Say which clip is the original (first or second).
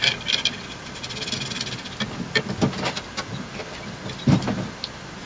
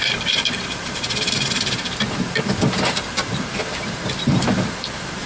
first